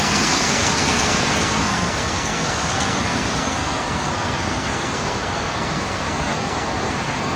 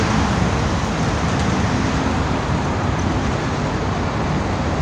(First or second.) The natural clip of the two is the second